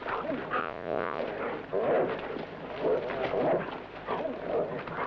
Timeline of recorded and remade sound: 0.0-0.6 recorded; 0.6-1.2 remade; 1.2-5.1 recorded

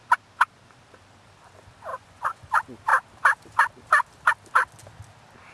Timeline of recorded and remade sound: 0.0-1.9 recorded; 1.9-2.5 remade; 2.5-5.5 recorded

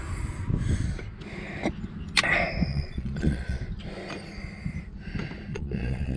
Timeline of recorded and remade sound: 0.0-2.7 recorded; 2.7-3.6 remade; 3.6-5.5 recorded; 5.5-6.2 remade